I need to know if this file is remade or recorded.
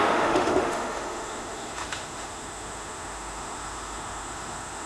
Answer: remade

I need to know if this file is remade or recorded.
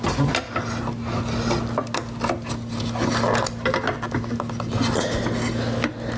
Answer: recorded